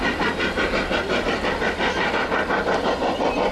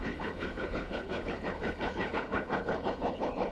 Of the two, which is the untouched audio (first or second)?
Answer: first